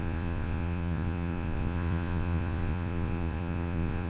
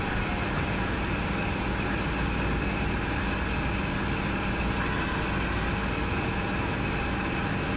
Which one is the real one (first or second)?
second